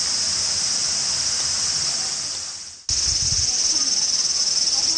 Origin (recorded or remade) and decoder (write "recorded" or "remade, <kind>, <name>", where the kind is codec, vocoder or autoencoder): recorded